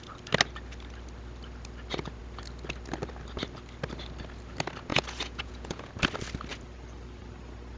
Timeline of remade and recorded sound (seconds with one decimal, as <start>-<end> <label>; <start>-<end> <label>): 0.0-4.9 recorded; 4.9-5.9 remade; 5.9-7.8 recorded